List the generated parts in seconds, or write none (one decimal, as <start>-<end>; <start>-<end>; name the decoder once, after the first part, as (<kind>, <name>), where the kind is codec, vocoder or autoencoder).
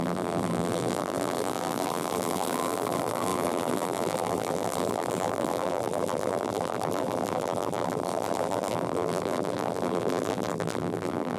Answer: 0.0-11.4 (vocoder, BigVGAN v2)